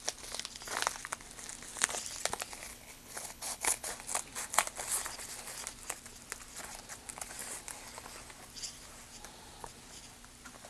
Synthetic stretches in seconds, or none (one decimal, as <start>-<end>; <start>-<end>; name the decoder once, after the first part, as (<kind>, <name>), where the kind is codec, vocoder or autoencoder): 2.7-3.9 (codec, HILCodec)